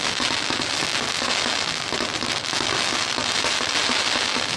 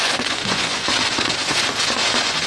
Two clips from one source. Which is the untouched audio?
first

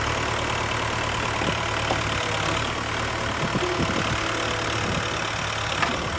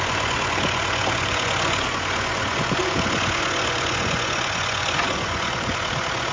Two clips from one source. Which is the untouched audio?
first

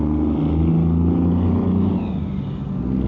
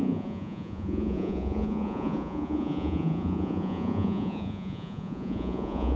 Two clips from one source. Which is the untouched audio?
first